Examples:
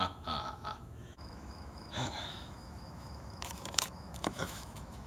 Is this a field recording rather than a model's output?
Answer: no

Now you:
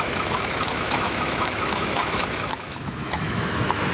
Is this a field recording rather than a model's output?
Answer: no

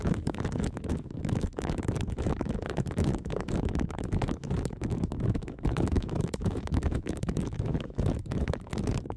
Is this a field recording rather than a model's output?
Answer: no